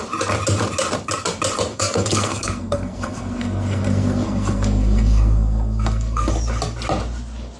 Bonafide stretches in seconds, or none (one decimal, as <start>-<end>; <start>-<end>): 0.0-1.7; 6.3-7.6